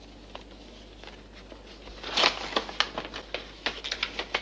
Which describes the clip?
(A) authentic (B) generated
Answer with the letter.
A